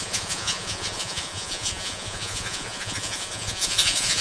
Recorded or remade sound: remade